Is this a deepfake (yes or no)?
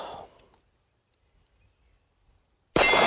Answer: no